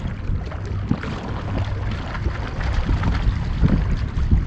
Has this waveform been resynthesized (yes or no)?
no